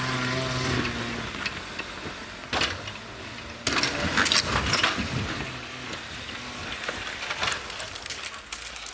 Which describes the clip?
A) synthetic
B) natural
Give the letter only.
B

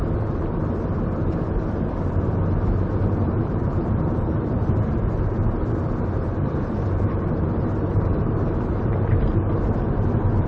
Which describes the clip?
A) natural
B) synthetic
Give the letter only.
B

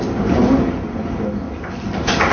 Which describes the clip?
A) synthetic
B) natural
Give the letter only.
B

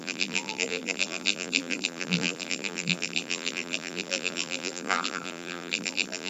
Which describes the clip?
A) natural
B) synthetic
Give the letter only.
B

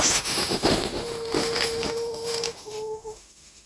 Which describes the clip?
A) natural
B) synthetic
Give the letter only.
B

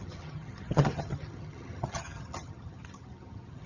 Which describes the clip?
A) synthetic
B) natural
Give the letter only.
A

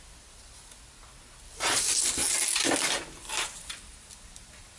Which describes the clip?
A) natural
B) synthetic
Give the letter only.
A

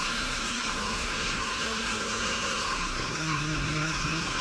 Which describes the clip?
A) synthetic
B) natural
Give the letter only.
A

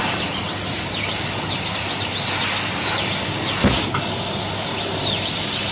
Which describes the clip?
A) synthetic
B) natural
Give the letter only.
B